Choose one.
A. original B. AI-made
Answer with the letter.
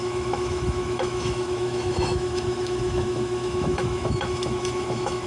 B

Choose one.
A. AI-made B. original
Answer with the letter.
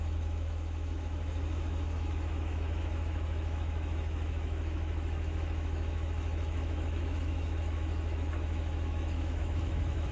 A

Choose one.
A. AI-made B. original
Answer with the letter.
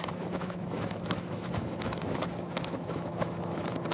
A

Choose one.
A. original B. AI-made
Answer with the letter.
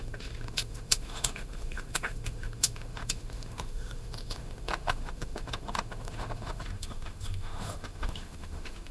B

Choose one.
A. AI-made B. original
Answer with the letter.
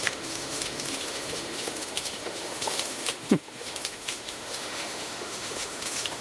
A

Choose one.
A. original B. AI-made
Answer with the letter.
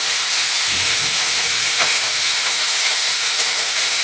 B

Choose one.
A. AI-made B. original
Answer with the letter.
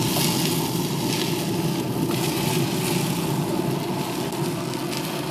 B